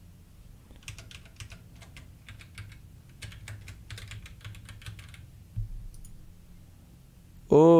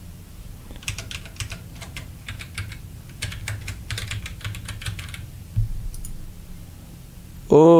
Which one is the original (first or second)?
first